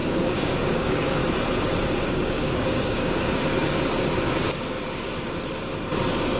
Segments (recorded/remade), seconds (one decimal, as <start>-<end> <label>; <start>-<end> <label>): 0.0-1.2 remade; 1.2-2.1 recorded; 2.1-3.4 remade; 3.4-6.4 recorded

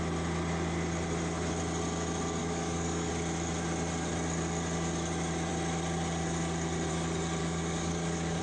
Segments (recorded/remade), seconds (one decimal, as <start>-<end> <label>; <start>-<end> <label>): 0.0-2.4 recorded; 2.4-3.1 remade; 3.1-7.4 recorded; 7.4-8.4 remade

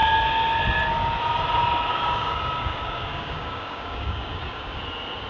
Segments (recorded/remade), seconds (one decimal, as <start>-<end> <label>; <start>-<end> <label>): 0.0-1.9 recorded; 1.9-4.8 remade; 4.8-5.3 recorded

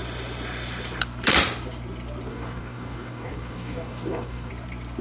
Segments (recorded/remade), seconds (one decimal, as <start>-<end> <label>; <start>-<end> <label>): 0.0-2.3 recorded; 2.3-4.5 remade; 4.5-5.0 recorded

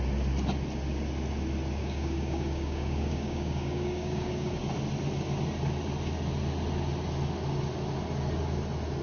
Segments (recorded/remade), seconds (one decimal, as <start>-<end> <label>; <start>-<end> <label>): 0.0-1.8 recorded; 1.8-4.5 remade; 4.5-9.0 recorded